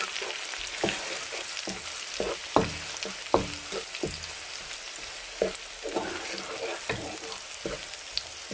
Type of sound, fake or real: real